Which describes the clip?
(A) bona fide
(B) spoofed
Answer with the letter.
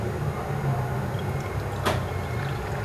A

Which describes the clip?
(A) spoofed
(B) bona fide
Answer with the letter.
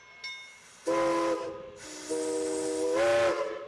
B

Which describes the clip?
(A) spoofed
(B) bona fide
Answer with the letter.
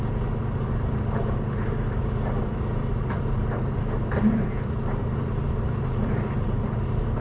A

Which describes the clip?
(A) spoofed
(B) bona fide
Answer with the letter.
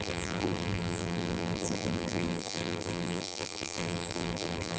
A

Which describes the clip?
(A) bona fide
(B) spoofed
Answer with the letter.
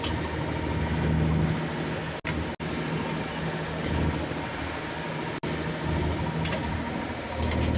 A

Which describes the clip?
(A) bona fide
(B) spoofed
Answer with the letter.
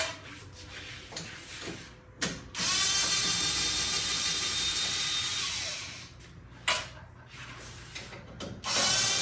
A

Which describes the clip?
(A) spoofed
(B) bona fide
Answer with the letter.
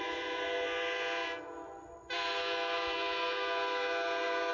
B